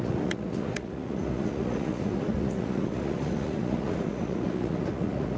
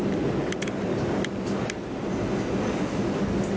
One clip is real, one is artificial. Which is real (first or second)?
second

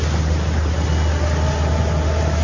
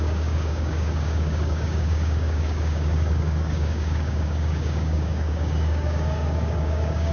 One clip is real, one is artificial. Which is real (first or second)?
first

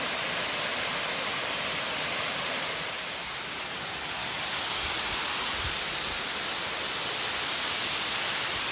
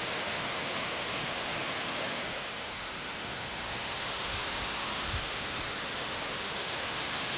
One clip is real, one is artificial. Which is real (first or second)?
first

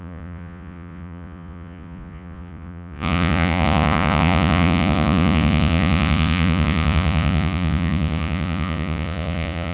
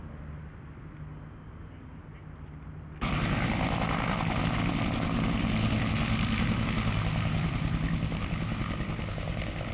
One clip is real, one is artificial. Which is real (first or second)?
second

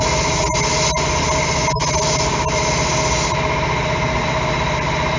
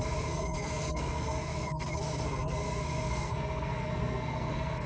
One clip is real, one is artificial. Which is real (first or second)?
first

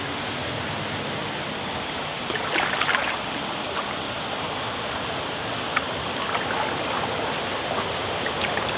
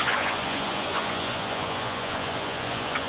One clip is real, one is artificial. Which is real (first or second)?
first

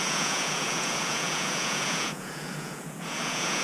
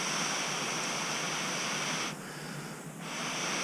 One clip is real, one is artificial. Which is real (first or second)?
second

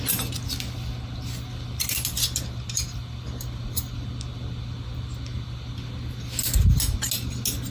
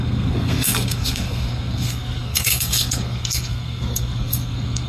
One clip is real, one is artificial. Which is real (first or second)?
first